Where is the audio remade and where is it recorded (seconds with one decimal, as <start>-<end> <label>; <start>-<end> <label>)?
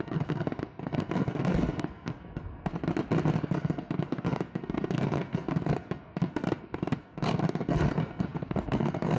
0.0-2.7 remade; 2.7-3.4 recorded; 3.4-9.2 remade